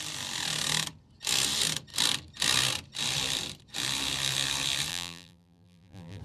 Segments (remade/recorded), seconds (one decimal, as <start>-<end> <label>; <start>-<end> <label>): 0.0-4.9 recorded; 4.9-6.2 remade